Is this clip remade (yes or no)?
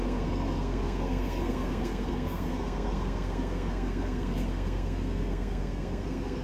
yes